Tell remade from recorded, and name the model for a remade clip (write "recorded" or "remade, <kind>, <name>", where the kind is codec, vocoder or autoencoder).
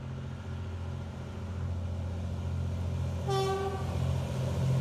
recorded